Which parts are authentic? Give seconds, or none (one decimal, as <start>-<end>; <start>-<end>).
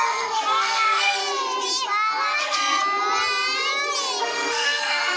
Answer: 1.2-2.4; 2.8-4.2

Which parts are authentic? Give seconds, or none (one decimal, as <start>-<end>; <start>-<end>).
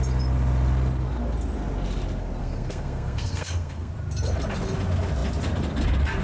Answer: 0.0-2.4; 3.9-6.2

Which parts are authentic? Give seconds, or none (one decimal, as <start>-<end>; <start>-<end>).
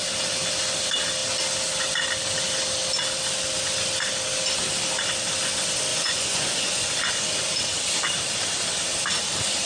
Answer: 0.0-5.9; 6.9-9.7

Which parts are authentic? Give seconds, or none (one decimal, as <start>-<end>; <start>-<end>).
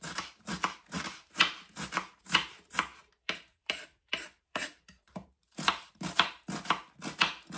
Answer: 6.8-7.6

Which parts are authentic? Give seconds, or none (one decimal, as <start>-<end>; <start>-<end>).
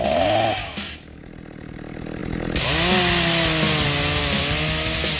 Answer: 0.0-0.6; 1.2-5.2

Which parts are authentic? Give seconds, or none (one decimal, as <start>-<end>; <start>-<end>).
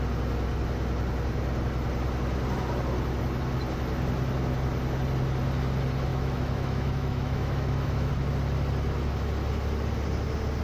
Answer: 0.0-6.1; 8.1-10.6